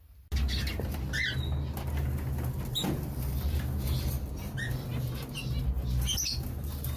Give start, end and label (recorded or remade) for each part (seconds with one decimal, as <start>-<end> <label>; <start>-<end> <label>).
0.0-7.0 recorded